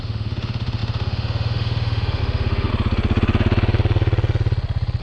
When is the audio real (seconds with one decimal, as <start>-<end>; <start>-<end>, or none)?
2.7-5.0